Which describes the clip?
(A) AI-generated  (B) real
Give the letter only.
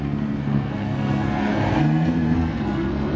A